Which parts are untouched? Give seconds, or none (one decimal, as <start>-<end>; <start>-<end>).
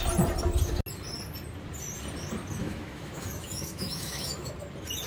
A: 0.0-2.6; 4.5-5.1